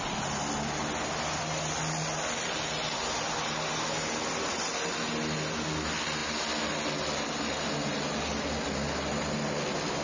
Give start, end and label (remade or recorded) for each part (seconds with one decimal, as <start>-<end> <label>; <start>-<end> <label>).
0.0-10.0 recorded